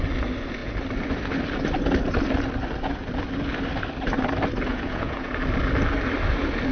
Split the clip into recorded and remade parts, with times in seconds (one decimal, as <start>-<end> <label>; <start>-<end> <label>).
0.0-4.7 recorded; 4.7-5.3 remade; 5.3-6.7 recorded